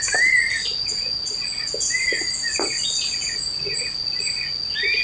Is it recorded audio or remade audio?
recorded